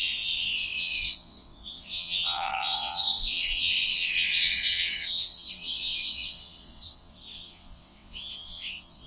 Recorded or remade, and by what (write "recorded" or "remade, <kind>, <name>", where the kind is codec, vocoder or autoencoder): remade, vocoder, WaveNeXt